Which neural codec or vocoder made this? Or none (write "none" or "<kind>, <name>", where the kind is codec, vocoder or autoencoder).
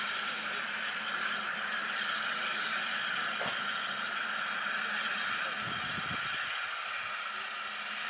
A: none